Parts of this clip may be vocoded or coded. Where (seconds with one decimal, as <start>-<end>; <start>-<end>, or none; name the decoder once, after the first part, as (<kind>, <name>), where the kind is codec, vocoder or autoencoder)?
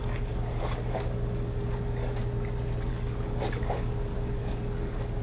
0.0-2.2 (codec, DAC); 2.9-5.2